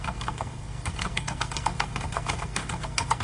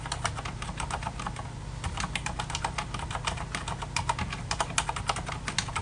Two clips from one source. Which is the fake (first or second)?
first